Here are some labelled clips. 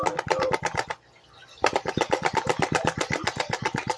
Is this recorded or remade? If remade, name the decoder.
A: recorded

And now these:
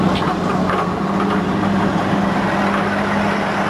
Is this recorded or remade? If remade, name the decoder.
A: recorded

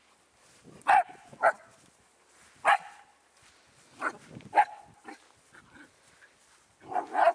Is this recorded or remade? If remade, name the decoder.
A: recorded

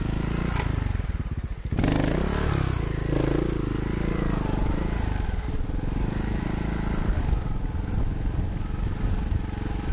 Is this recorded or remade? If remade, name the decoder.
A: recorded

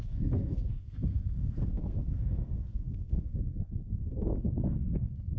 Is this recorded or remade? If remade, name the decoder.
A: remade, codec, SNAC